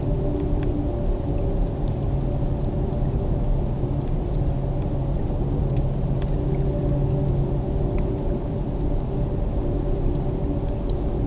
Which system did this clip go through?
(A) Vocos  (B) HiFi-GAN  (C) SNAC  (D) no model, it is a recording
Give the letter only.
D